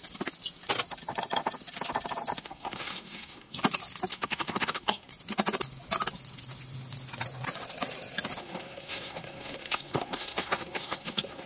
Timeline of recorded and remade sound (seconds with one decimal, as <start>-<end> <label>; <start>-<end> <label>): 0.0-2.4 recorded; 2.4-3.6 remade; 3.6-4.1 recorded; 4.1-5.1 remade; 5.1-8.4 recorded; 8.4-11.5 remade